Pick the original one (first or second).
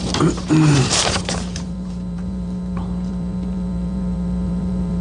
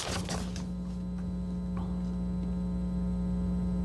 second